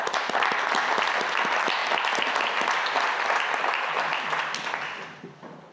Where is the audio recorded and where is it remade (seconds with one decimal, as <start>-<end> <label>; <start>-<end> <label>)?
0.0-5.7 recorded